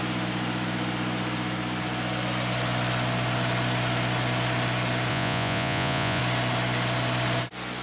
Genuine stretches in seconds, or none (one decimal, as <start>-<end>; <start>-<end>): 0.0-5.1; 6.2-7.8